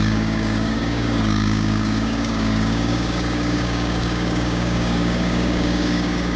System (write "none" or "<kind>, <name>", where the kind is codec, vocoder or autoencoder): codec, DAC